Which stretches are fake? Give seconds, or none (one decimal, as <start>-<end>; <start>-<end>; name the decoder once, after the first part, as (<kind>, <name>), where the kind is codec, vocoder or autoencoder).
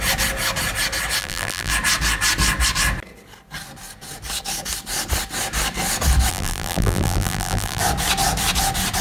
1.2-1.7 (vocoder, BigVGAN v2); 6.3-7.8